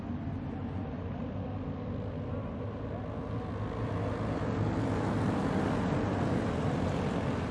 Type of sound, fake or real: real